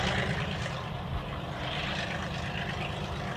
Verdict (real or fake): fake